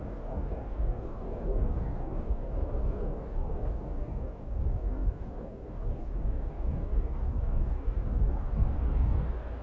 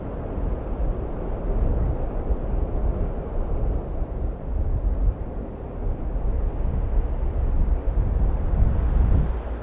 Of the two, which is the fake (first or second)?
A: first